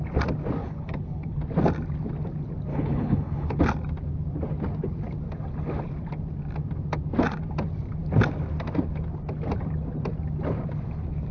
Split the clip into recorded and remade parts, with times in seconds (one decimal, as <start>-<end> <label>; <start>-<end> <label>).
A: 0.0-0.6 recorded; 0.6-1.4 remade; 1.4-2.7 recorded; 2.7-3.6 remade; 3.6-11.3 recorded